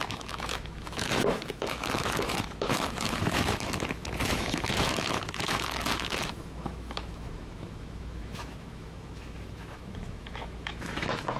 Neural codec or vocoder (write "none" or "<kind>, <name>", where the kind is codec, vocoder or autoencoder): autoencoder, DAC-VAE